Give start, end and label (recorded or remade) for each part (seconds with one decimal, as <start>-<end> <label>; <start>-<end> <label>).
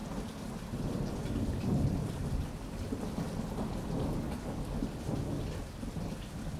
0.0-6.6 recorded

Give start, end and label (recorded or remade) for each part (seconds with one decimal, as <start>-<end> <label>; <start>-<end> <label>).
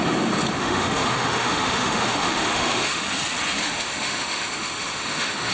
0.0-0.6 recorded; 0.6-3.0 remade; 3.0-3.6 recorded; 3.6-5.5 remade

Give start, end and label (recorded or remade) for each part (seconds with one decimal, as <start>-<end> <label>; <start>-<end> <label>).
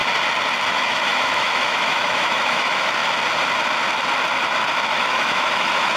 0.0-0.7 recorded; 0.7-3.0 remade; 3.0-4.9 recorded; 4.9-6.0 remade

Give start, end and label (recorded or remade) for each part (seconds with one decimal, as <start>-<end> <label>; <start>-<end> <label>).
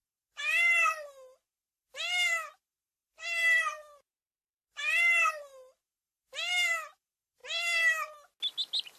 0.0-9.0 recorded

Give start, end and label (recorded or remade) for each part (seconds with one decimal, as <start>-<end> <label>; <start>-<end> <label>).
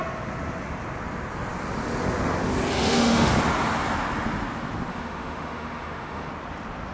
0.0-2.7 recorded; 2.7-3.3 remade; 3.3-4.9 recorded; 4.9-6.3 remade; 6.3-6.9 recorded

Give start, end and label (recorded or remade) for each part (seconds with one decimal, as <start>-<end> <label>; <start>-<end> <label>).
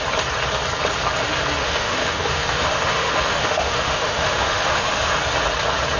0.0-1.6 recorded; 1.6-5.2 remade; 5.2-6.0 recorded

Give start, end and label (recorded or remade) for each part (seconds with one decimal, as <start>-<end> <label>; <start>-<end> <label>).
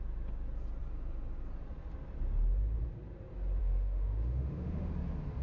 0.0-3.6 recorded; 3.6-4.9 remade; 4.9-5.4 recorded